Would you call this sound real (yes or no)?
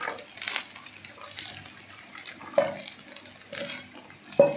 yes